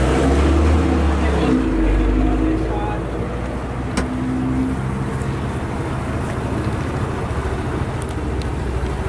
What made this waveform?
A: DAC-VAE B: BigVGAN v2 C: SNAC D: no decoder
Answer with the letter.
D